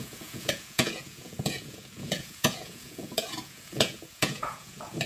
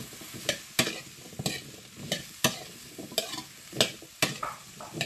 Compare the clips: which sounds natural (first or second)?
second